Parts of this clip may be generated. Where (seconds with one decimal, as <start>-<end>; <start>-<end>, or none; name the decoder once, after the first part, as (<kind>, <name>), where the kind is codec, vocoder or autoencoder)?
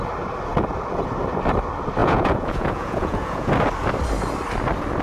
2.0-3.5 (vocoder, Vocos)